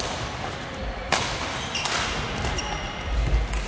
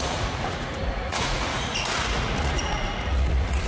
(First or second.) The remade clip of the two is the second